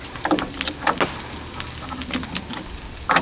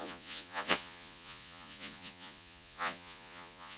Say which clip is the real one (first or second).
first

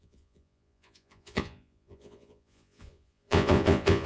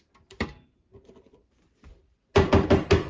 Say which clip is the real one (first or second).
second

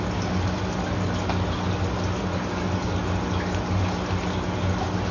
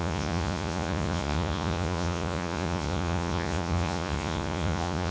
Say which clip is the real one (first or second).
first